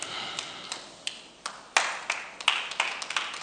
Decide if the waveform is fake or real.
real